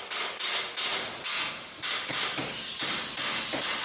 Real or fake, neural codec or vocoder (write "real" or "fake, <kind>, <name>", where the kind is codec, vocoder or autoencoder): real